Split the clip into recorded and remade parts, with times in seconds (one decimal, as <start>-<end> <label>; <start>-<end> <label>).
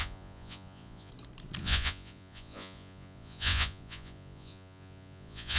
0.0-1.1 remade; 1.1-1.6 recorded; 1.6-5.6 remade